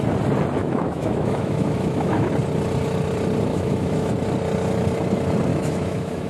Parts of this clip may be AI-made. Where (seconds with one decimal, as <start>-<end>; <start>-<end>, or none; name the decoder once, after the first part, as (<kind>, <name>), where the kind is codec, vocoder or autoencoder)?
0.6-2.3 (autoencoder, DAC-VAE); 3.5-4.1; 5.5-6.3